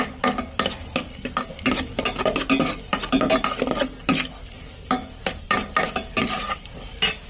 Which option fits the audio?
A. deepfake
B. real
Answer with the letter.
B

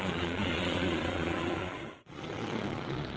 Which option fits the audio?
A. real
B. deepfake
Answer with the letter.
B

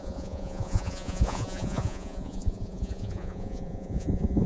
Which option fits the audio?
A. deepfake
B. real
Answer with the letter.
A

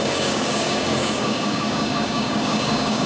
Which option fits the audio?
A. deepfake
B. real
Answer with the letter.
A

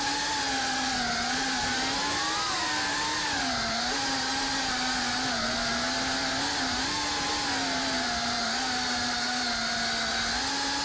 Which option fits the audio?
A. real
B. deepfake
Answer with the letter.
A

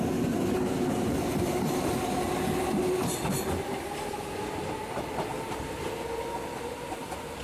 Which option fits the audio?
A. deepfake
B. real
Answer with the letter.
B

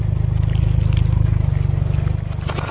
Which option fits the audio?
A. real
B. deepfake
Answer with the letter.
A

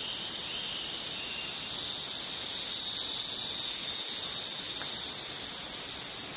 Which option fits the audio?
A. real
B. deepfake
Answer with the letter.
A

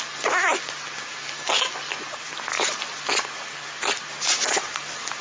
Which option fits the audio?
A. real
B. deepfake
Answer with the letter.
A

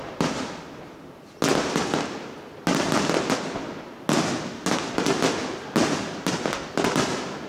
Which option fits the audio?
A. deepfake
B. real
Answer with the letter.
B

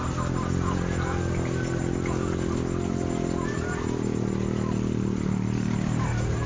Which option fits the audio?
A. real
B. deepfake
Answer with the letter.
A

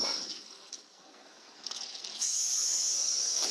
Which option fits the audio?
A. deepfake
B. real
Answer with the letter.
A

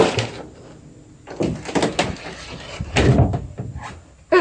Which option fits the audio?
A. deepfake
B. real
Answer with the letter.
B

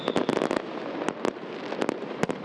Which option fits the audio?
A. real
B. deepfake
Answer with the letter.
A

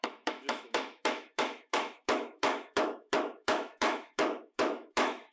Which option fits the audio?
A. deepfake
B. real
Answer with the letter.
A